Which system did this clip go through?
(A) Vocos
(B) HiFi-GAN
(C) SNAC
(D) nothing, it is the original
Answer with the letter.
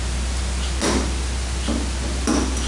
D